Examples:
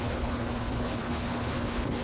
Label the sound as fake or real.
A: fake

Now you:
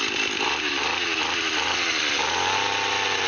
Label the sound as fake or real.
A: real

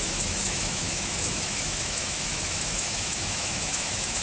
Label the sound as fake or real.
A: fake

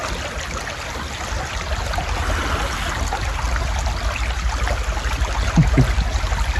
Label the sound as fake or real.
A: real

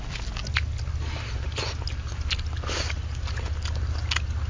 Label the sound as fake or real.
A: real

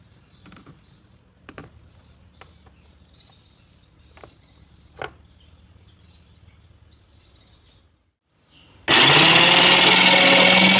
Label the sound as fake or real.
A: real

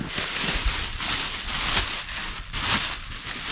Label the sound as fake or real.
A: real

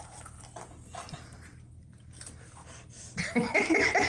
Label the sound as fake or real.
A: real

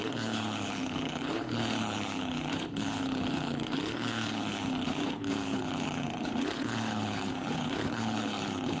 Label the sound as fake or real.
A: fake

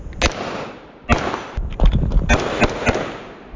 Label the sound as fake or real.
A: real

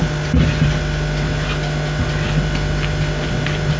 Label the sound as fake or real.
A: real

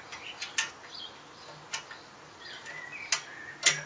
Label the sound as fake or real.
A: real